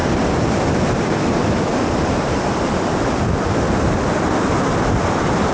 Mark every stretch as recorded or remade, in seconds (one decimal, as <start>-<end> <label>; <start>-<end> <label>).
0.0-5.5 recorded